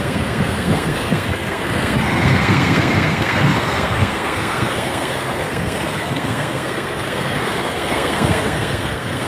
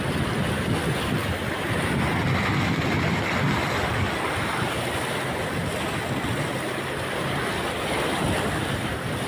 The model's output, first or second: first